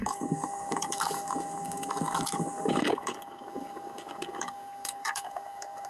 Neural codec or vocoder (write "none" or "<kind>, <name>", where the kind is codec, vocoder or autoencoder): codec, DAC